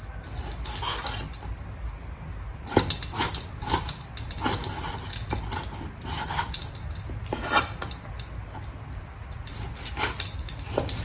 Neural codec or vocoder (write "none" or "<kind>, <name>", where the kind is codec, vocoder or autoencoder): none